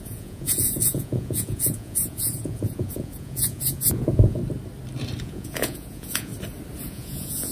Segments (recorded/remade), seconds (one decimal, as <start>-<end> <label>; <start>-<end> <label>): 0.0-4.4 remade; 4.4-5.2 recorded; 5.2-6.3 remade; 6.3-6.9 recorded; 6.9-7.5 remade